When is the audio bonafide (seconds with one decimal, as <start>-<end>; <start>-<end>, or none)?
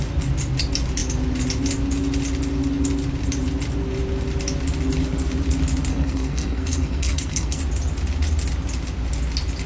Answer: 0.0-5.9; 7.6-9.7